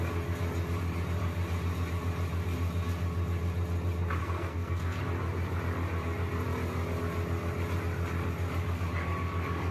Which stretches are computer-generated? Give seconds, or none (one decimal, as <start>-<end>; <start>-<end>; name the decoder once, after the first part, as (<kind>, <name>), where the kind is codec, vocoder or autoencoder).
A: 4.2-5.0 (codec, SNAC)